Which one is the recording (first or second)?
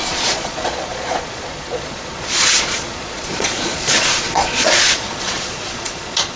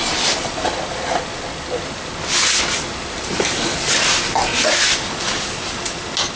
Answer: second